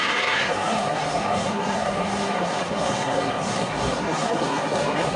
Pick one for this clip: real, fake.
fake